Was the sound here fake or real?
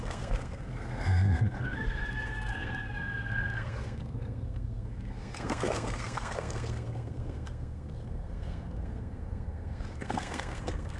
fake